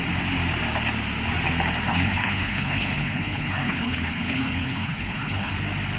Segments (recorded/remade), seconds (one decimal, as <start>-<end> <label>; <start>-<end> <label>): 0.0-1.9 recorded; 1.9-5.5 remade; 5.5-6.0 recorded